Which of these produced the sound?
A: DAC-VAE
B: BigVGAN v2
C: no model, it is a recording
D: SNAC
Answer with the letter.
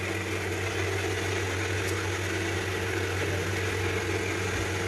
C